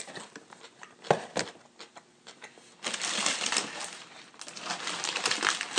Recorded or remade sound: recorded